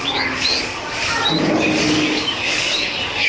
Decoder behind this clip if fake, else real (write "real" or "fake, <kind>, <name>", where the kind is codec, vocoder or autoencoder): fake, codec, DAC